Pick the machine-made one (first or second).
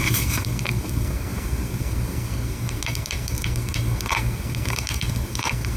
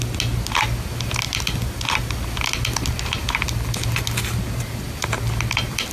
first